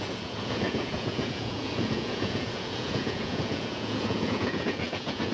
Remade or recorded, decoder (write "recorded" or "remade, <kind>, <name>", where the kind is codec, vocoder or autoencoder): remade, vocoder, Vocos